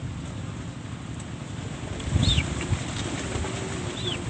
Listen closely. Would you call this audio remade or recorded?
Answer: recorded